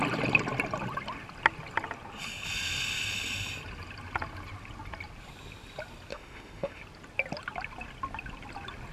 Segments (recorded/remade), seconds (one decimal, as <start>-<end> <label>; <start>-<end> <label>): 0.0-6.1 recorded; 6.1-6.8 remade; 6.8-8.9 recorded